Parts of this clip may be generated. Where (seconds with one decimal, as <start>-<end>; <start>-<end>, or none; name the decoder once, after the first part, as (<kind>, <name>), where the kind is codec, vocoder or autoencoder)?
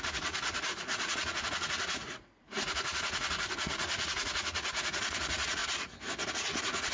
0.0-5.6 (vocoder, Vocos); 6.3-6.9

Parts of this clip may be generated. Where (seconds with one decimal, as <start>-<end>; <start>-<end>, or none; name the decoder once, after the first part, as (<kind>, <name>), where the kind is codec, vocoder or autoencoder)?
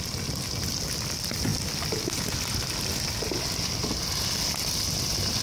none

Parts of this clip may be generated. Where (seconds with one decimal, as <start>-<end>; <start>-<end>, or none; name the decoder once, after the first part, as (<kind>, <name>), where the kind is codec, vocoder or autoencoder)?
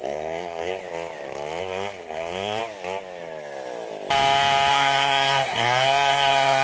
0.0-0.8 (codec, SNAC); 1.6-2.6; 4.7-6.6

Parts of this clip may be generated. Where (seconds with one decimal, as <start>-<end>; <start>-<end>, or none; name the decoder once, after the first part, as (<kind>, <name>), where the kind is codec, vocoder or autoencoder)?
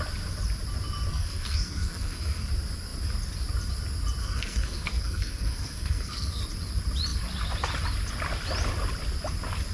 1.1-2.5 (codec, SNAC); 4.2-6.4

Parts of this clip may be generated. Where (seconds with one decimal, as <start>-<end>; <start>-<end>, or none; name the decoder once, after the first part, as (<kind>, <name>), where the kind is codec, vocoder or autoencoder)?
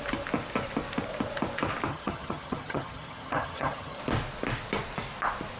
1.9-4.0 (vocoder, HiFi-GAN)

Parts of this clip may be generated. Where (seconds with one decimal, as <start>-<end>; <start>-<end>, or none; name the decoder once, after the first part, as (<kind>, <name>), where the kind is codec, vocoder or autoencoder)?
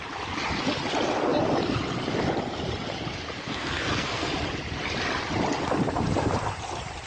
3.4-4.3 (codec, SNAC)